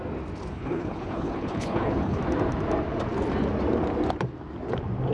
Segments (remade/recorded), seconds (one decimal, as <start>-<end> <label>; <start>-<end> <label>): 0.0-0.5 recorded; 0.5-2.2 remade; 2.2-5.1 recorded